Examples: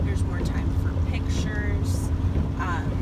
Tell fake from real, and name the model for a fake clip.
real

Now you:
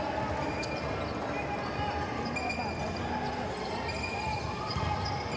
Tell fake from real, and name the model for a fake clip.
real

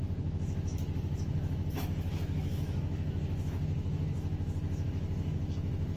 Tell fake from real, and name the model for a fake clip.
fake, autoencoder, DAC-VAE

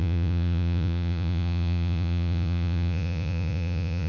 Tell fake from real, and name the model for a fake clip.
fake, vocoder, Vocos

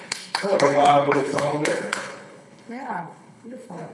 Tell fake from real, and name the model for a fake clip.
fake, codec, HILCodec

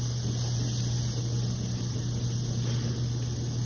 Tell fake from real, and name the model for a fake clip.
real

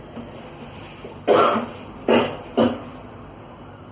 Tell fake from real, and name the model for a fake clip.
real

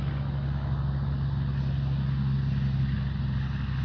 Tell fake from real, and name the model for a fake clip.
real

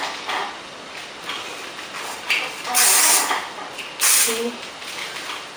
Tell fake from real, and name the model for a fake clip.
real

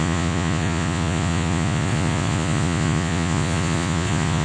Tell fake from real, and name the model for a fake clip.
fake, vocoder, Vocos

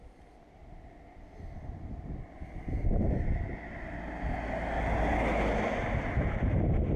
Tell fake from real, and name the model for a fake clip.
real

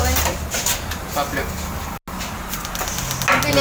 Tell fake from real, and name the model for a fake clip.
real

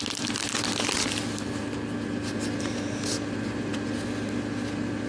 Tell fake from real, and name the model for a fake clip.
real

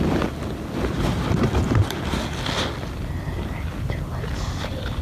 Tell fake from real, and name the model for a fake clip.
fake, vocoder, BigVGAN v2